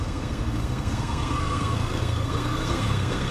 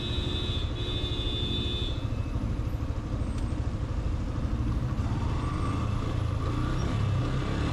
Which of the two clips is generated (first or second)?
first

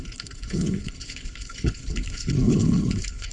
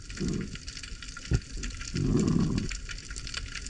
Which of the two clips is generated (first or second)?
first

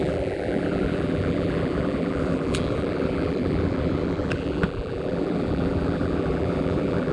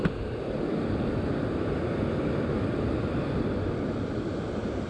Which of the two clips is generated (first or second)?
first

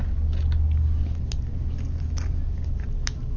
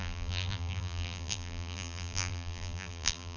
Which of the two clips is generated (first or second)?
second